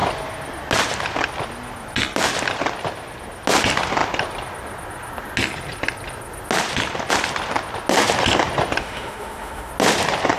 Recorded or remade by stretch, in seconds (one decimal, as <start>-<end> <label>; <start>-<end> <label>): 0.0-8.8 recorded; 8.8-9.7 remade; 9.7-10.4 recorded